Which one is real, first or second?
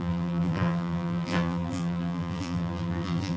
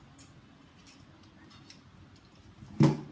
second